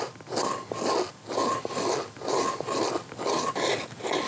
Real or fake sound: real